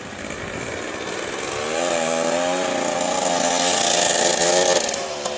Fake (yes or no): no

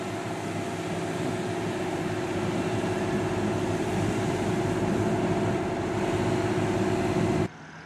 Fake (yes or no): no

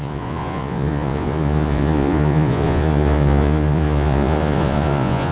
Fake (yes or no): yes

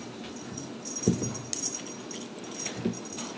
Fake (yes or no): no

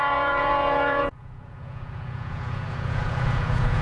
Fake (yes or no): yes